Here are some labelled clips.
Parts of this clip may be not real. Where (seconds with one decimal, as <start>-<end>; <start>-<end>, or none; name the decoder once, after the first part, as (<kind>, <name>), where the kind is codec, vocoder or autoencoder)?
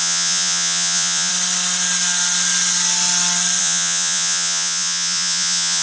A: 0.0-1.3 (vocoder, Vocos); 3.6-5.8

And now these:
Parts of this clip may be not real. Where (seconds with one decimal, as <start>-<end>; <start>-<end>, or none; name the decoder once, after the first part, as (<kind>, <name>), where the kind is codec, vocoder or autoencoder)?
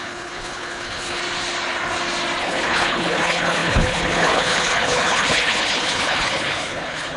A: 0.0-1.2 (codec, HILCodec); 2.4-7.2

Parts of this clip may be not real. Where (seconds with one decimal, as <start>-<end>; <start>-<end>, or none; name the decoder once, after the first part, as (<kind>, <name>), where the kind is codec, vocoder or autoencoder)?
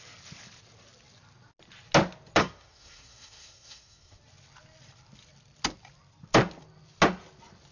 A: 2.4-4.2 (codec, SNAC)